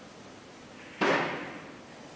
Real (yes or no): yes